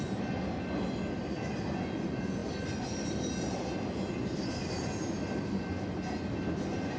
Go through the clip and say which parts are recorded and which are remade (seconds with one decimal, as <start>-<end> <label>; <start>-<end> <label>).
0.0-7.0 recorded